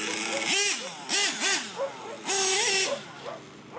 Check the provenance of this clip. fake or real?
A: real